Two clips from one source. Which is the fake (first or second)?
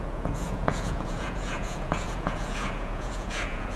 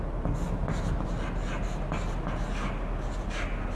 first